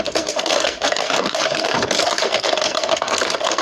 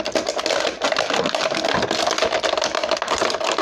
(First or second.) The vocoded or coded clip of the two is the first